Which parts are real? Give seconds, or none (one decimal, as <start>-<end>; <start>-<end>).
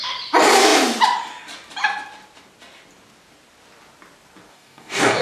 0.0-4.5